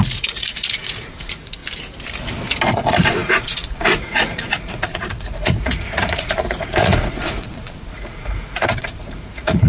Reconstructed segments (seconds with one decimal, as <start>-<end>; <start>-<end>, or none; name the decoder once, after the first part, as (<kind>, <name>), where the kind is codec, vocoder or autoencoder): 0.0-1.6 (vocoder, Vocos); 2.7-9.7